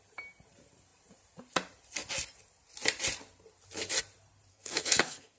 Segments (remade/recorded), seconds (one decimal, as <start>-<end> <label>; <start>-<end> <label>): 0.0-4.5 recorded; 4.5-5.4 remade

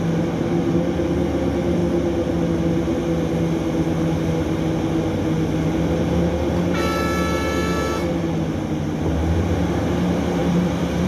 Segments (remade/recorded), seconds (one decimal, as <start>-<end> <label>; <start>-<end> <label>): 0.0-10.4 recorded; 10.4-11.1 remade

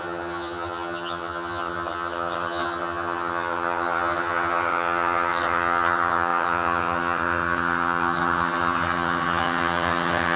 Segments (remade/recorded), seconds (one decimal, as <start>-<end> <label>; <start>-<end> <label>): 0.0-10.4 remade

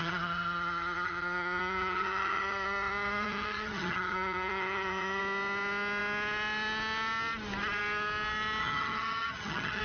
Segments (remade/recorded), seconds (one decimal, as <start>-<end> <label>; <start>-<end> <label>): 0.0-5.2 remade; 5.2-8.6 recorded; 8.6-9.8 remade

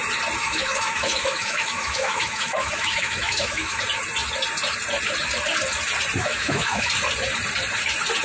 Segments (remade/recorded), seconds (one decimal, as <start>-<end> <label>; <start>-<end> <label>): 0.0-0.4 recorded; 0.4-3.8 remade; 3.8-6.2 recorded; 6.2-6.9 remade; 6.9-8.2 recorded

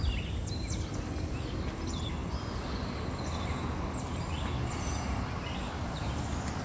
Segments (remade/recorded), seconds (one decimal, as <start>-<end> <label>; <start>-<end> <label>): 0.0-6.6 recorded

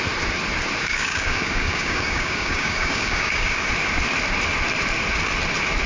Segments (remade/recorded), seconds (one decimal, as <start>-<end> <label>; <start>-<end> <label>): 0.0-0.8 recorded; 0.8-3.7 remade; 3.7-5.9 recorded